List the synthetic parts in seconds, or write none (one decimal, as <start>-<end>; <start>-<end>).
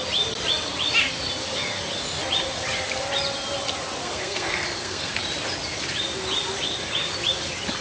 4.0-5.1